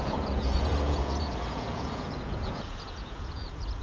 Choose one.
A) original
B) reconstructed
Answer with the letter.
B